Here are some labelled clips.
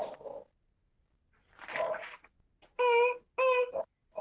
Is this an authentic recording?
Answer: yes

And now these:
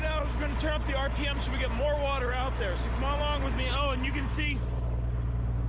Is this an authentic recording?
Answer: yes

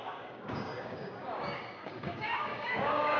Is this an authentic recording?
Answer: no